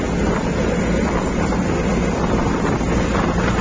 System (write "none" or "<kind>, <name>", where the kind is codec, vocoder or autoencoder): none